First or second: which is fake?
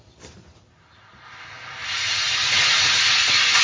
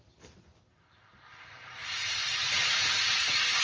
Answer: second